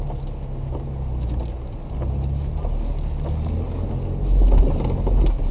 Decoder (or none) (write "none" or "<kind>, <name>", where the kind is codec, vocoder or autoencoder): none